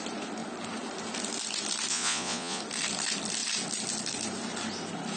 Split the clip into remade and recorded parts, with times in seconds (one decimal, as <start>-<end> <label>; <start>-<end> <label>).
0.0-1.9 recorded; 1.9-2.6 remade; 2.6-5.2 recorded

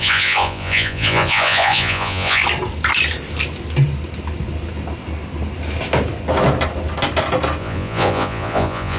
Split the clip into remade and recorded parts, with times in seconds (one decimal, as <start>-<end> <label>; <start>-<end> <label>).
0.0-2.4 remade; 2.4-7.6 recorded; 7.6-9.0 remade

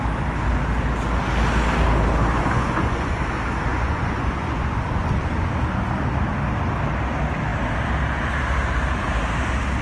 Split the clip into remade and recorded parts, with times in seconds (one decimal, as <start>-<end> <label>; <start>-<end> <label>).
0.0-2.3 recorded; 2.3-3.2 remade; 3.2-3.7 recorded; 3.7-5.5 remade; 5.5-9.8 recorded

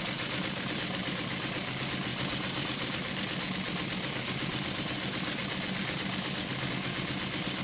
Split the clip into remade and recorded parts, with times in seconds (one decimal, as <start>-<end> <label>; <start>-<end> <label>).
0.0-7.6 recorded

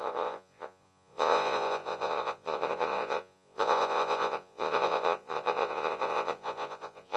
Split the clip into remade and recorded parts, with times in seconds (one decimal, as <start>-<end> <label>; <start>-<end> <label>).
0.0-7.2 remade

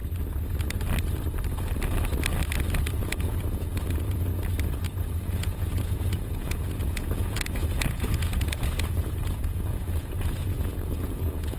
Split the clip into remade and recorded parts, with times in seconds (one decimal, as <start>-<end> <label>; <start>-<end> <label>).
0.0-3.0 recorded; 3.0-4.3 remade; 4.3-5.2 recorded; 5.2-11.6 remade

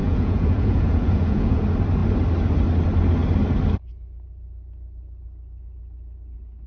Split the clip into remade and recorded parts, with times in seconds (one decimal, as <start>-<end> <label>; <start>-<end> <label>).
0.0-1.6 remade; 1.6-6.7 recorded